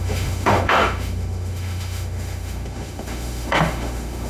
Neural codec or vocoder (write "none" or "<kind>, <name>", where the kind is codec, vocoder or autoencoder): autoencoder, DAC-VAE